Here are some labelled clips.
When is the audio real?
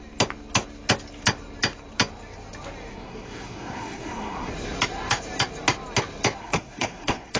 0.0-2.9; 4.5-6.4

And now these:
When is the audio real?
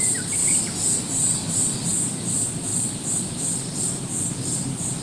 0.0-5.0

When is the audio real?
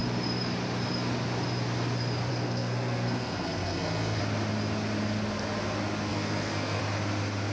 0.0-2.3; 4.2-6.1; 6.8-7.5